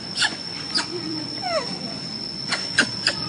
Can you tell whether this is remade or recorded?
remade